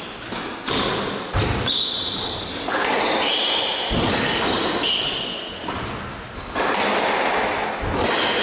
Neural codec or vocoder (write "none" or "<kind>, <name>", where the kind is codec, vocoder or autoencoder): none